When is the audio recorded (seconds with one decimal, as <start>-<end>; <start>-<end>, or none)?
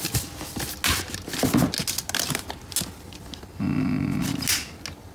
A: 0.0-5.1